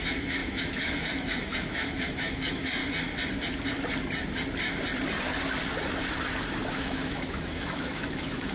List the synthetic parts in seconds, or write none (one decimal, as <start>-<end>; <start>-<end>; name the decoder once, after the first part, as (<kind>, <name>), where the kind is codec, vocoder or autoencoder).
0.0-2.8 (autoencoder, DAC-VAE); 6.7-8.5